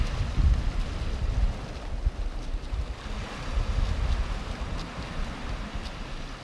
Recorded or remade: recorded